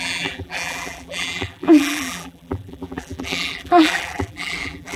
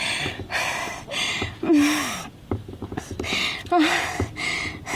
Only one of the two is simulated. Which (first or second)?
first